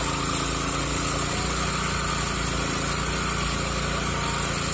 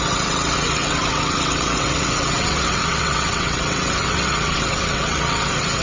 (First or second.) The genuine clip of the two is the first